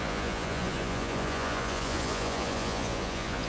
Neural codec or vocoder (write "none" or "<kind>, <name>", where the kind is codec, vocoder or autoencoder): vocoder, Vocos